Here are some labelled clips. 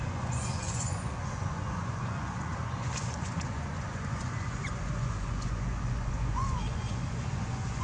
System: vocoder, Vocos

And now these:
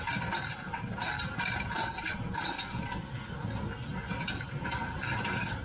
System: none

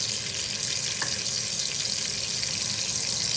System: none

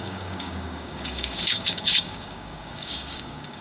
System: codec, DAC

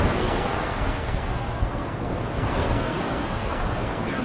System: codec, SNAC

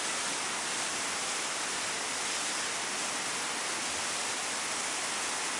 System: none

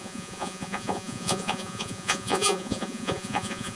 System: vocoder, Vocos